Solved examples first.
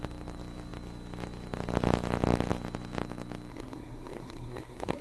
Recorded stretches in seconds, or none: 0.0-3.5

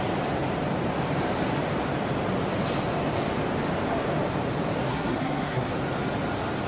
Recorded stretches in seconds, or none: 0.0-4.9; 5.7-6.7

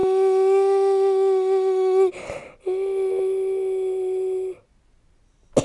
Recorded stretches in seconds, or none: 2.1-5.6

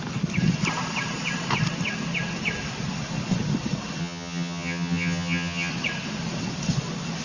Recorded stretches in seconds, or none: 0.0-4.0; 5.7-7.2